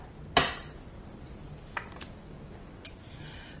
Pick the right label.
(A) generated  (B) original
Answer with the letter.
B